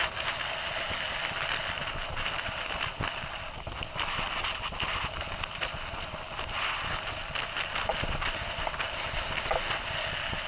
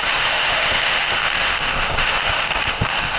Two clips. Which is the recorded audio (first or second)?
first